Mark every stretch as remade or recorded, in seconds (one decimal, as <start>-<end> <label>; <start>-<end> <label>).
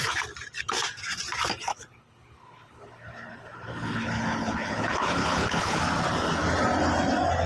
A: 0.0-1.7 recorded; 1.7-5.8 remade; 5.8-7.5 recorded